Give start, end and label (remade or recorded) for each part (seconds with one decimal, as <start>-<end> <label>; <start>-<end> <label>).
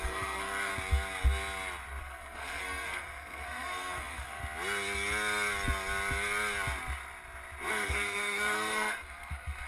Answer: 0.0-0.7 remade; 0.7-2.0 recorded; 2.0-4.4 remade; 4.4-7.7 recorded; 7.7-9.7 remade